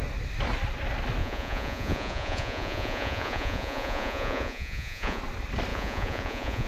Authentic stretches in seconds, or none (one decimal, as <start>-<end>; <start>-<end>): 0.0-1.2; 5.2-5.7